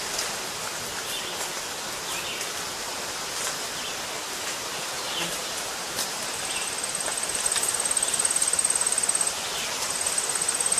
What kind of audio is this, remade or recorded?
recorded